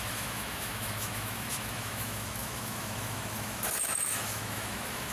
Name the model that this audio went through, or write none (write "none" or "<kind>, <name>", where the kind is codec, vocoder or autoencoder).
autoencoder, DAC-VAE